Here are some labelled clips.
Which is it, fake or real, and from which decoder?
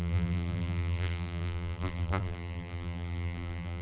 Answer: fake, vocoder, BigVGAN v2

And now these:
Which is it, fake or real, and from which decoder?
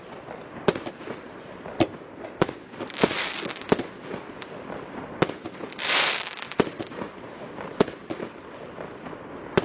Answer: real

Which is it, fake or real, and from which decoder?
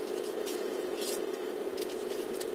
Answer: fake, vocoder, Vocos